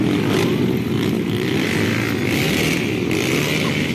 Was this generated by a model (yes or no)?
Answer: no